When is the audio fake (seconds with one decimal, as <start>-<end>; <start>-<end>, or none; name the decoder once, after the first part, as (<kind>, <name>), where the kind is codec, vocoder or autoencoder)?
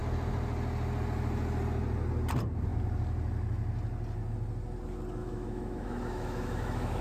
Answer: 5.2-7.0 (autoencoder, DAC-VAE)